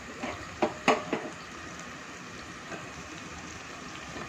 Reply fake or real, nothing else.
real